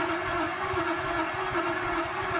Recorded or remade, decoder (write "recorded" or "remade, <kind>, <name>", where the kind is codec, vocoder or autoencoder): remade, vocoder, Vocos